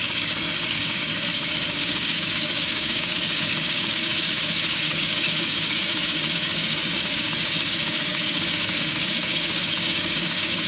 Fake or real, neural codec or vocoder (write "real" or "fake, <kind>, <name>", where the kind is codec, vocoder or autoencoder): fake, codec, DAC